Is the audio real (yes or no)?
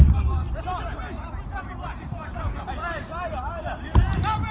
no